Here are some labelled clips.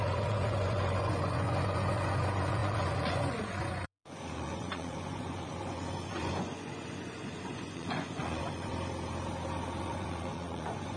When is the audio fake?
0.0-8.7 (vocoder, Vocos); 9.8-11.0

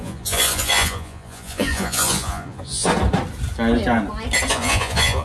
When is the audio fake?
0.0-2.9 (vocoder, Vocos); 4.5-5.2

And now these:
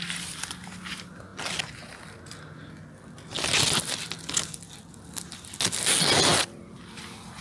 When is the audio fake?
none

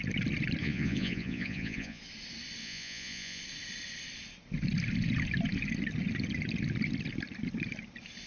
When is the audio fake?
0.6-2.0 (vocoder, Vocos); 2.6-3.4